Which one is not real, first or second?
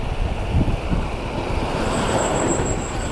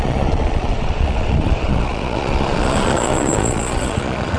second